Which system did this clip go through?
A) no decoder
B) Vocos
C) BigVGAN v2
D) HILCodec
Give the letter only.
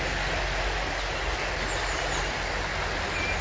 A